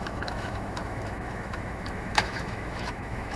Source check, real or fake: fake